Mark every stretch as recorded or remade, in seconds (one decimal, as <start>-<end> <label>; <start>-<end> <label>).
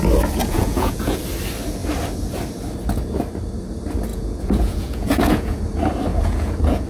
0.0-0.4 recorded; 0.4-1.2 remade; 1.2-4.1 recorded; 4.1-5.6 remade; 5.6-6.1 recorded; 6.1-6.9 remade